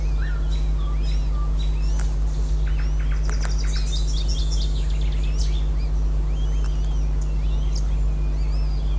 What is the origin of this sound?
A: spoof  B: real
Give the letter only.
B